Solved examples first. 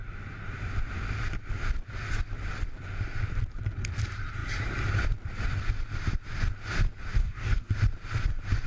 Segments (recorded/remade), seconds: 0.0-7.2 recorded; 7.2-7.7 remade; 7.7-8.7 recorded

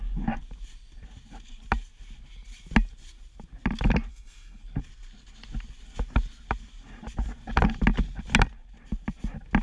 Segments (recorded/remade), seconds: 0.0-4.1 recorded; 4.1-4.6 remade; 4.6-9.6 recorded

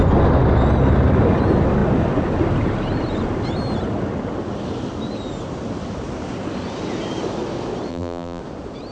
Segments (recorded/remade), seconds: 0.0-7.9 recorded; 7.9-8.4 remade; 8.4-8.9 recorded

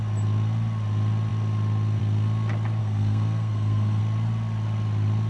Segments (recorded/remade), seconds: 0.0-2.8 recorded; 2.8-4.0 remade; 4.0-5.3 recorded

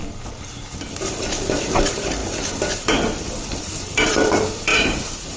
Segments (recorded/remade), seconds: 0.0-0.9 recorded; 0.9-5.4 remade

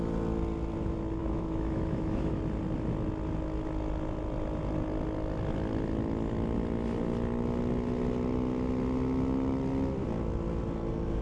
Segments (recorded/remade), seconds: 0.0-1.2 recorded; 1.2-2.4 remade; 2.4-11.2 recorded

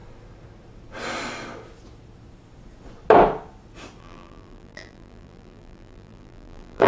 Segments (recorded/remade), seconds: 0.0-4.0 recorded; 4.0-6.9 remade

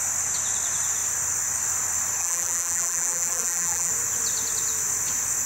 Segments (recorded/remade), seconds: 0.0-2.2 recorded; 2.2-3.9 remade; 3.9-5.5 recorded